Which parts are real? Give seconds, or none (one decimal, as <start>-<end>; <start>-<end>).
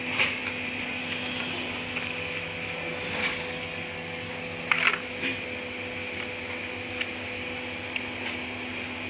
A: 0.0-3.2; 4.3-9.1